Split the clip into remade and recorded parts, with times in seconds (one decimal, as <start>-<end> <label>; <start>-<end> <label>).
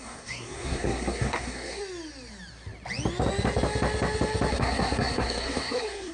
0.0-1.8 remade; 1.8-4.5 recorded; 4.5-6.1 remade